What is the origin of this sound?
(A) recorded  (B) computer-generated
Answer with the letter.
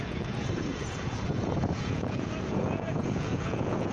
B